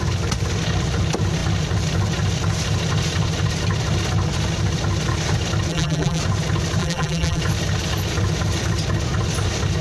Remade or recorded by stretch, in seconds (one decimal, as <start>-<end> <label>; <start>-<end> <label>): 0.0-5.7 recorded; 5.7-6.2 remade; 6.2-6.8 recorded; 6.8-7.4 remade; 7.4-9.8 recorded

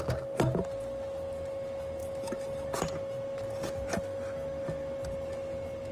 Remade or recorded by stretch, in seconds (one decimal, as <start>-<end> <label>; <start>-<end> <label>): 0.0-5.9 recorded

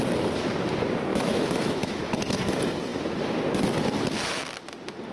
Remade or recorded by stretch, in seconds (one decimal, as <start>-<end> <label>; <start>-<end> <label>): 0.0-1.1 recorded; 1.1-2.0 remade; 2.0-5.1 recorded